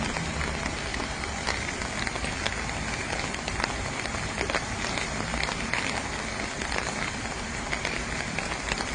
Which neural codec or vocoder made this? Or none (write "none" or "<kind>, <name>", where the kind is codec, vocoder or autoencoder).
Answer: none